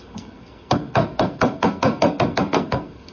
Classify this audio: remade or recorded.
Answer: remade